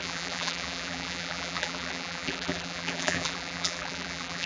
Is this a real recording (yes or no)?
no